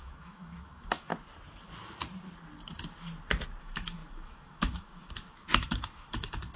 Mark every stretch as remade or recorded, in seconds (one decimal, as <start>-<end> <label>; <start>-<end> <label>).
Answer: 0.0-1.1 remade; 1.1-3.6 recorded; 3.6-6.6 remade